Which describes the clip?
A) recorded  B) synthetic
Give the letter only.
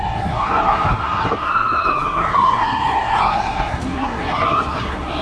B